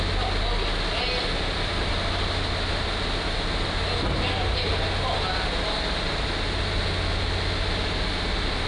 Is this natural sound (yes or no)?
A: yes